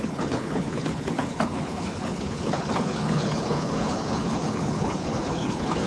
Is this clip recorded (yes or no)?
no